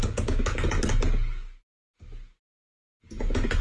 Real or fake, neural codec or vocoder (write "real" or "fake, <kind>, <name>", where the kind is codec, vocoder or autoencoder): real